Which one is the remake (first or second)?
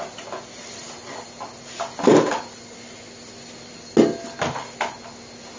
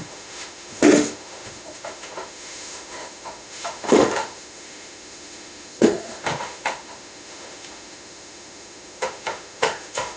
second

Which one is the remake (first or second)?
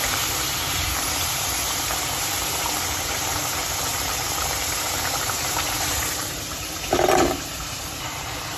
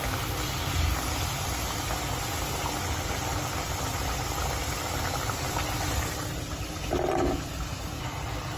first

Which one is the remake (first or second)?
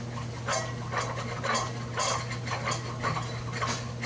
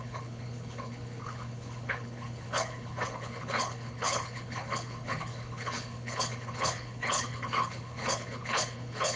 second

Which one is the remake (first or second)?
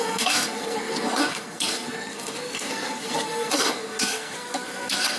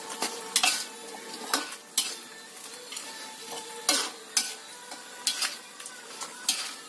first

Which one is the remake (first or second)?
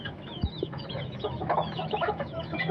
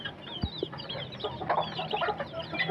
first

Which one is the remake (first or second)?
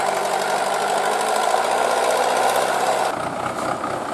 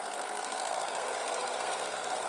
second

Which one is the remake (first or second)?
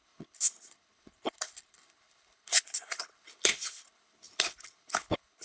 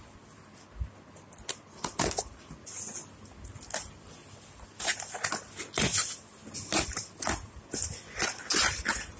first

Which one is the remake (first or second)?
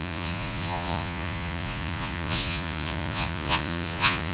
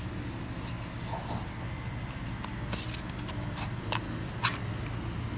first